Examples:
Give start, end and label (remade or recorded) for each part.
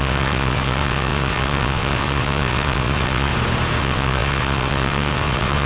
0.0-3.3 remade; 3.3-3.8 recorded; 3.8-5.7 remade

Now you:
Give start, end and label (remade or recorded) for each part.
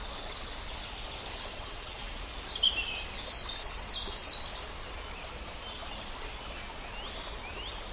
0.0-1.5 recorded; 1.5-2.2 remade; 2.2-7.9 recorded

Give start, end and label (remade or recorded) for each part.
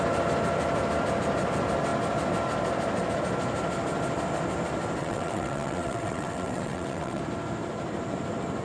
0.0-5.0 recorded; 5.0-7.2 remade; 7.2-8.6 recorded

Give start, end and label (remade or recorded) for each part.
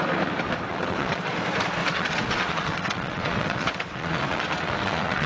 0.0-0.7 recorded; 0.7-1.3 remade; 1.3-1.8 recorded; 1.8-5.3 remade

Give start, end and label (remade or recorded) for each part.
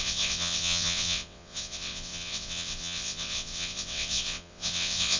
0.0-5.2 remade